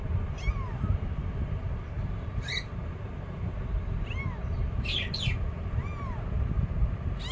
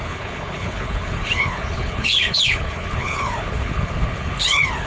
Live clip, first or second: first